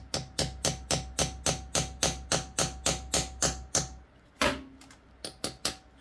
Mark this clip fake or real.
real